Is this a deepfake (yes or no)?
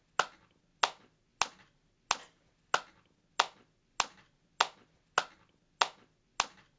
no